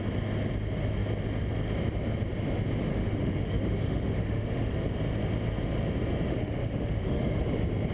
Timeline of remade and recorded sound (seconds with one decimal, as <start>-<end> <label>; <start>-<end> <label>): 0.0-2.9 recorded; 2.9-4.7 remade; 4.7-6.3 recorded; 6.3-7.4 remade; 7.4-7.9 recorded